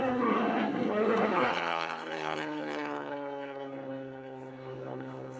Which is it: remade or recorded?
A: remade